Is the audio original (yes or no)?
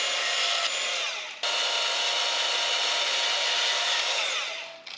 yes